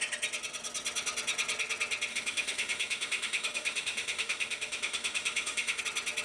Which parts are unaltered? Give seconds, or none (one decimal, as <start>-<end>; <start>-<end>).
0.0-2.1; 5.8-6.2